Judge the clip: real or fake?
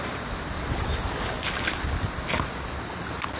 real